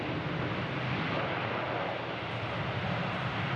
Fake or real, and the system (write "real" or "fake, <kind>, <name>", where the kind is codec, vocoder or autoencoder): real